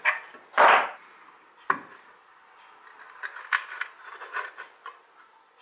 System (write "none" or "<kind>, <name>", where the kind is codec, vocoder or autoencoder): none